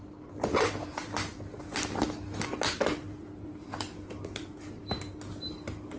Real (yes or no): yes